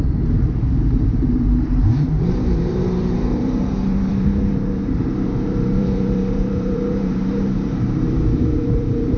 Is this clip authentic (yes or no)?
no